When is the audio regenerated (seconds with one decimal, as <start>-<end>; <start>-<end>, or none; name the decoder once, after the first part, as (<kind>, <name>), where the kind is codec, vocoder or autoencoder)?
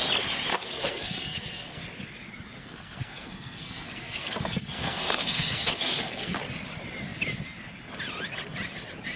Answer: 0.5-1.8 (codec, SNAC); 2.6-6.4